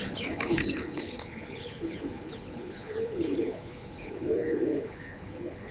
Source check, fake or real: fake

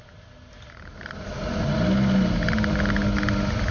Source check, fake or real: real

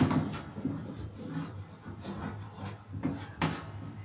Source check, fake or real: real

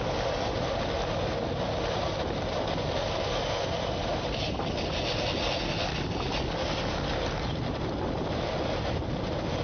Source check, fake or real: real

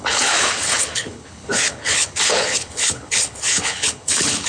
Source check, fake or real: fake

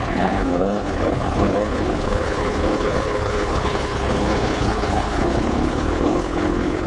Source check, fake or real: fake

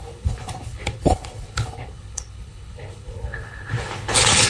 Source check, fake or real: fake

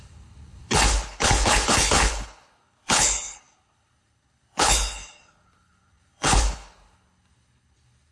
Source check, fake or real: fake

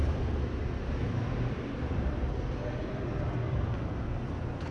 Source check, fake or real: real